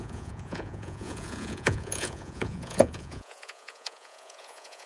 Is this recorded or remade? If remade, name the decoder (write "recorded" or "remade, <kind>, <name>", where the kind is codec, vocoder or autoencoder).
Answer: remade, vocoder, Vocos